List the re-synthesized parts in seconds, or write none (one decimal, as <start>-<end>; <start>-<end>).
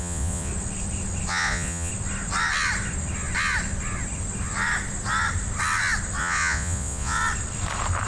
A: 0.0-0.5; 1.3-1.9; 6.2-7.2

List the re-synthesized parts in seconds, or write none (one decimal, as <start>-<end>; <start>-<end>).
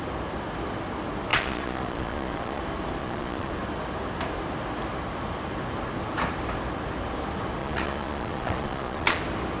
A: 1.3-2.6; 3.0-3.5; 7.6-9.2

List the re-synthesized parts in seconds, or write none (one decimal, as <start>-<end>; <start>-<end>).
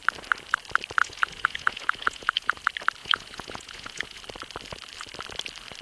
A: 1.0-2.6; 3.0-4.2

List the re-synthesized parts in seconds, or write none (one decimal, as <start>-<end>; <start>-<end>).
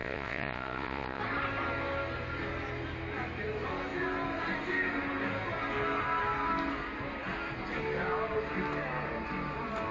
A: 0.0-1.2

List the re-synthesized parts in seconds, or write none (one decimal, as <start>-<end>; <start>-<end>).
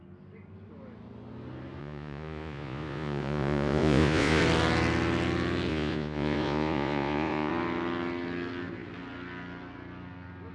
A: 1.8-4.4; 5.7-7.5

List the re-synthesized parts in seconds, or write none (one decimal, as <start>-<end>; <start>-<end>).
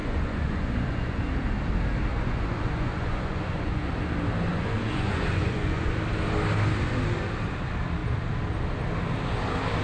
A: 0.0-1.2; 2.1-3.9; 4.5-5.9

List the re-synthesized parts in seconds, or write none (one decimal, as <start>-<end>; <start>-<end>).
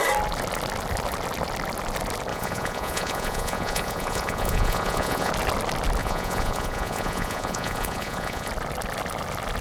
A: 2.3-5.3; 6.0-8.5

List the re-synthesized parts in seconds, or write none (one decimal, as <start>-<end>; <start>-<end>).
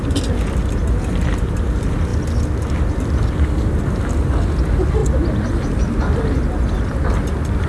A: none